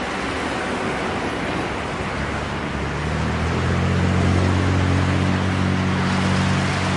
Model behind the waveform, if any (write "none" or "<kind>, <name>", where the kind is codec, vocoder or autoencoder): none